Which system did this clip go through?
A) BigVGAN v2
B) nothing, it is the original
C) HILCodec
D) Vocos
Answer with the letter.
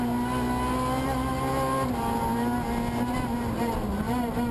B